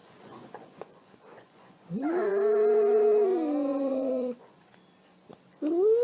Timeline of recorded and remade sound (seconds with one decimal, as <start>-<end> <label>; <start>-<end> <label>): 0.0-2.3 remade; 2.3-3.7 recorded; 3.7-4.8 remade; 4.8-6.0 recorded